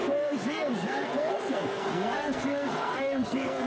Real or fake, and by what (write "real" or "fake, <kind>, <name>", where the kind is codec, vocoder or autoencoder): fake, codec, SNAC